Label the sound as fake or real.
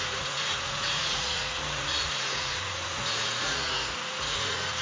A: fake